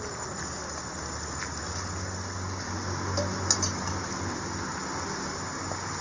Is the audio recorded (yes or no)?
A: yes